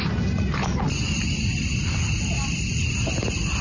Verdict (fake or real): real